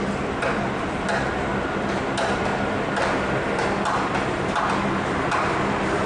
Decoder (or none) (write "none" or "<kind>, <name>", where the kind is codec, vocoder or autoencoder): none